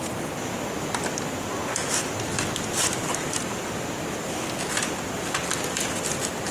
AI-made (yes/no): no